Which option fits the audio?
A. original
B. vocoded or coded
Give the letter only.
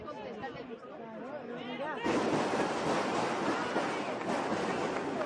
A